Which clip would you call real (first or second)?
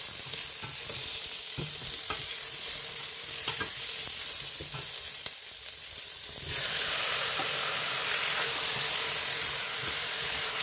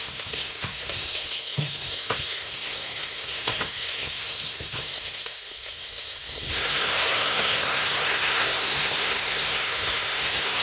first